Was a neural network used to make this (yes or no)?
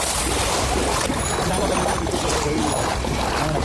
no